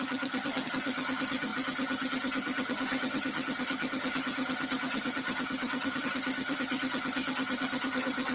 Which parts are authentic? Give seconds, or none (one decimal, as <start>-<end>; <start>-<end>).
none